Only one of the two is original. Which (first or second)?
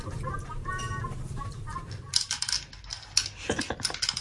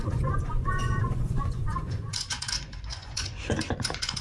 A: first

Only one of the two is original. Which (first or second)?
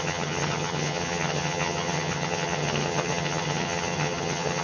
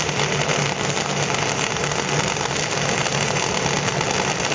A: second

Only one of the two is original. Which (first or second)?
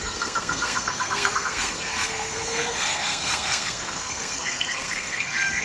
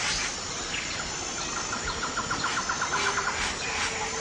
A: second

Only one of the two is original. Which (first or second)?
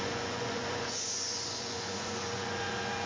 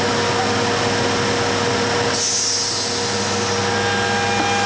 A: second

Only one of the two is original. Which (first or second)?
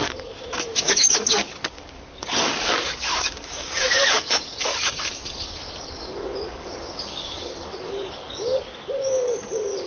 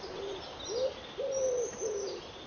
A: second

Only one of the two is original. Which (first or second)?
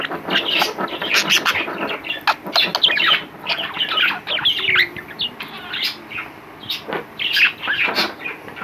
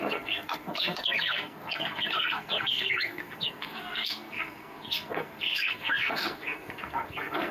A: first